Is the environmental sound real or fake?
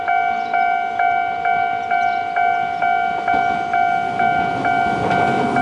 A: real